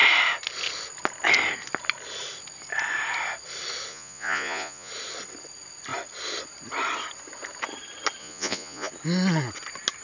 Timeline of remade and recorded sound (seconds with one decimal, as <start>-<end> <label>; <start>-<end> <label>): 0.0-3.9 recorded; 3.9-4.9 remade; 4.9-8.2 recorded; 8.2-8.9 remade; 8.9-10.0 recorded